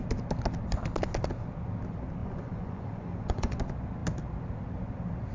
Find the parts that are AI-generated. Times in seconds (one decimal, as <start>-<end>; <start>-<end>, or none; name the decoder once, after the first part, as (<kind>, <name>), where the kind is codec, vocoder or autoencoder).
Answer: 2.2-3.6 (vocoder, Vocos)